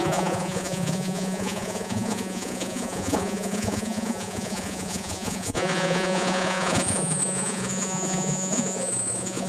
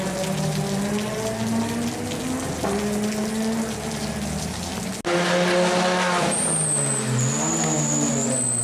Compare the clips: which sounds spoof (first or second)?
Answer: first